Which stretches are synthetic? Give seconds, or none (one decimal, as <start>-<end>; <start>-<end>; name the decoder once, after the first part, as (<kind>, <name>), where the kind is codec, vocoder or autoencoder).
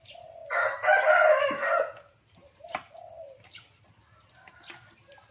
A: 0.0-0.4 (vocoder, BigVGAN v2); 2.6-5.3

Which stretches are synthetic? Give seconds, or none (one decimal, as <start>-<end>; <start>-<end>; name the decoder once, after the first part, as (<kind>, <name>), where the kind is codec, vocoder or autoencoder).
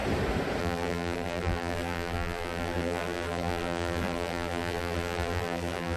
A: 0.6-6.0 (vocoder, BigVGAN v2)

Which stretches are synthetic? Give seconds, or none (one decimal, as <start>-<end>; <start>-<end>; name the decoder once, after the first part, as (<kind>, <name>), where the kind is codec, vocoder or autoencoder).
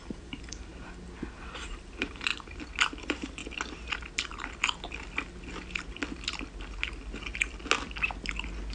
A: 0.0-0.7 (vocoder, BigVGAN v2); 1.3-2.3; 3.0-3.4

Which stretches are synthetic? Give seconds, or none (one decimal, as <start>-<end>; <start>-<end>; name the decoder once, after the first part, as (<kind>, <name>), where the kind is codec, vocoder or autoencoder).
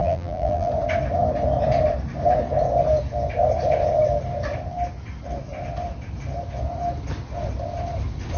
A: 0.0-0.7 (vocoder, BigVGAN v2)